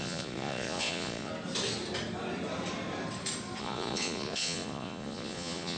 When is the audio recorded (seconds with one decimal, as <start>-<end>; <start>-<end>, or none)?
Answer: 1.3-3.6